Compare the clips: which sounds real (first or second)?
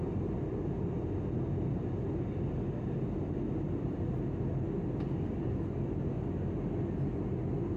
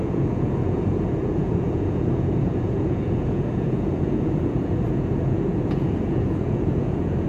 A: first